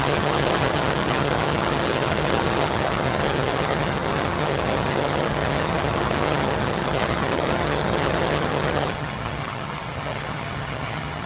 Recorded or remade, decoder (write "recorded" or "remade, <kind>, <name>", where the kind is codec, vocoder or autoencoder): remade, vocoder, HiFi-GAN